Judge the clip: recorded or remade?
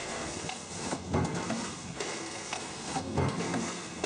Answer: remade